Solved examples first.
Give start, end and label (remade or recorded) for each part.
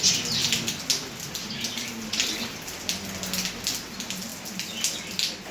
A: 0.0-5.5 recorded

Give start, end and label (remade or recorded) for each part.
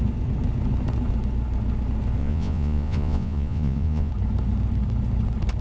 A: 0.0-2.2 recorded; 2.2-4.1 remade; 4.1-5.6 recorded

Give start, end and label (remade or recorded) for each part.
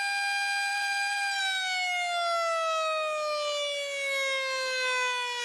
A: 0.0-0.7 recorded; 0.7-1.4 remade; 1.4-5.4 recorded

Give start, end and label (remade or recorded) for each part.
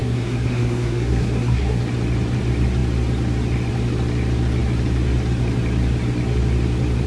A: 0.0-1.8 remade; 1.8-7.1 recorded